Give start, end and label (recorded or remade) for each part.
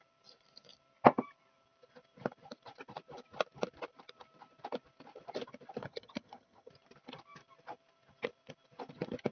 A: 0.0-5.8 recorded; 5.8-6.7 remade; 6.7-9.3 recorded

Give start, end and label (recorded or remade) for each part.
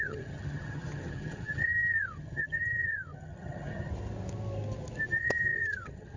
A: 0.0-3.9 remade; 3.9-5.1 recorded; 5.1-6.2 remade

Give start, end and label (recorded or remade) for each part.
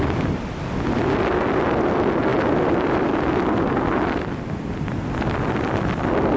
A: 0.0-6.4 recorded